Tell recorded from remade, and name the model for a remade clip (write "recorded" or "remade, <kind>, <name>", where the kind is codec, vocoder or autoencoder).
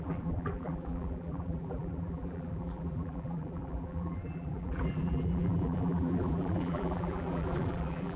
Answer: remade, vocoder, BigVGAN v2